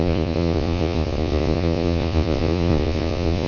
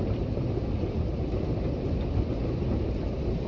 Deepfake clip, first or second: first